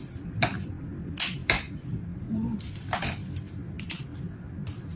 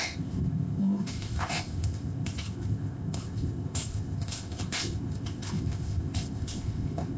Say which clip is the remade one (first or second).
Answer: second